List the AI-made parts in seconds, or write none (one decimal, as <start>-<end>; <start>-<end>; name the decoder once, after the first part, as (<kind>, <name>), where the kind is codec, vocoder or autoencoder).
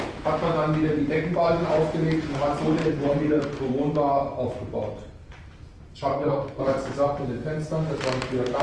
2.8-3.4 (codec, HILCodec); 6.1-6.6